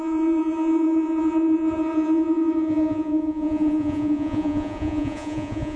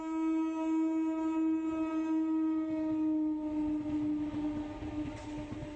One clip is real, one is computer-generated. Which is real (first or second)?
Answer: second